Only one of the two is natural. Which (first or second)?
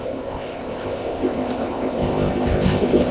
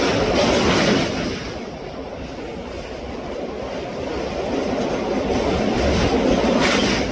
second